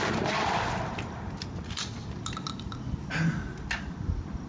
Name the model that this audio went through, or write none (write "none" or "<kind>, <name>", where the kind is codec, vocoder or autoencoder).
none